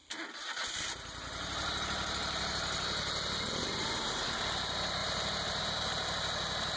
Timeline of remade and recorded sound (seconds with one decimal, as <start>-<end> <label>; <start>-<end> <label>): 0.0-5.0 recorded; 5.0-5.6 remade; 5.6-6.8 recorded